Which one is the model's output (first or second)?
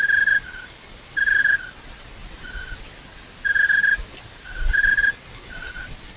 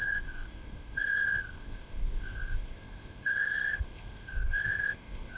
second